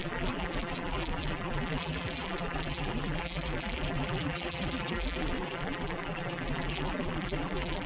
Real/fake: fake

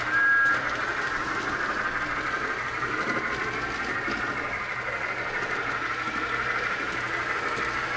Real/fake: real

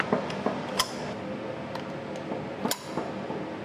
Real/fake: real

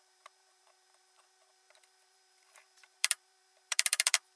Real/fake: fake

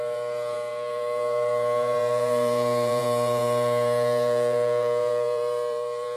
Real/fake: fake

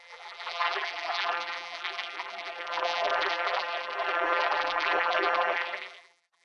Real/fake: fake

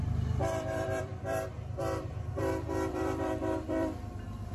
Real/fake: fake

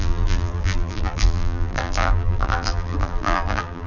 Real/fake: fake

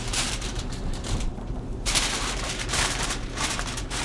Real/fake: fake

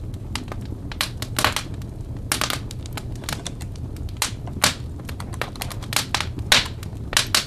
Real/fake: real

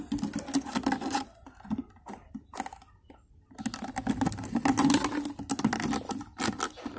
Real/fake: real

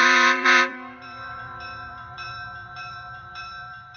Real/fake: fake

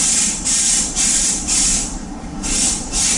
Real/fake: fake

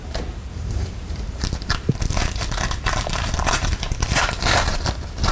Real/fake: fake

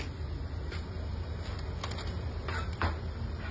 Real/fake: real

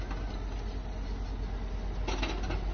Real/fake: real